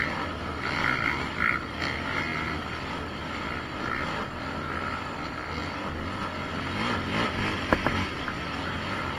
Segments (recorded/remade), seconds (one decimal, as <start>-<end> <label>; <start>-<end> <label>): 0.0-9.2 recorded